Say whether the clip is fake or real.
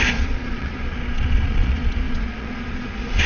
fake